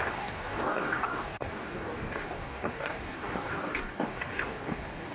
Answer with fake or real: fake